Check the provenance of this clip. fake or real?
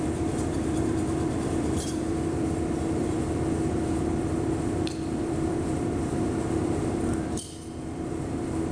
fake